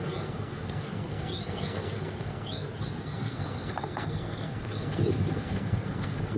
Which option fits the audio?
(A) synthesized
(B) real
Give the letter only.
A